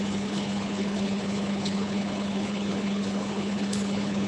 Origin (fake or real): fake